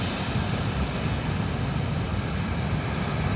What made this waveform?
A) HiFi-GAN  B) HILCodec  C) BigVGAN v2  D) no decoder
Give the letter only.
D